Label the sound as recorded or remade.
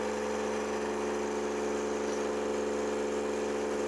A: recorded